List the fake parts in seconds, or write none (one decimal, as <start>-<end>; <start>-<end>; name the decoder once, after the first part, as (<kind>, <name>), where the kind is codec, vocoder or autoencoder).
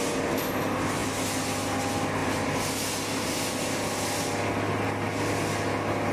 none